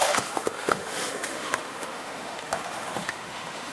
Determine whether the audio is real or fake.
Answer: fake